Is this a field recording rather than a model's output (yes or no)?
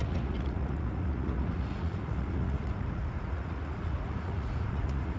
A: no